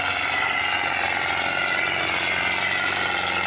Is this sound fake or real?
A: real